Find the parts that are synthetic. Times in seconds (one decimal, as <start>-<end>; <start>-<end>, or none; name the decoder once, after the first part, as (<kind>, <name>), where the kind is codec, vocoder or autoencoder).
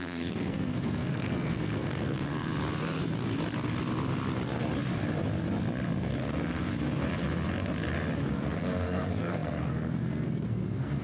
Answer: 0.0-2.5 (codec, SNAC); 6.0-6.7; 8.3-11.0